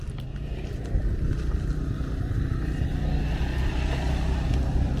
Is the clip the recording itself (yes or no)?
yes